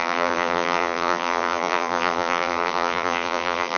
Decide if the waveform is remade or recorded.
remade